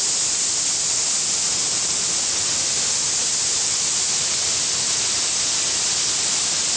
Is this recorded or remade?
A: recorded